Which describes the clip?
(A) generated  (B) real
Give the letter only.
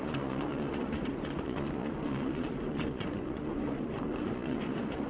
A